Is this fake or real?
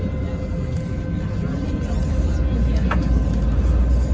real